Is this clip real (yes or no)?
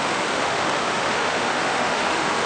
no